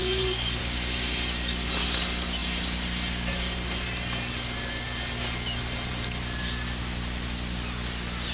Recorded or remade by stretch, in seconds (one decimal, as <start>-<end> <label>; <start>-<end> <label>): 0.0-0.6 remade; 0.6-8.3 recorded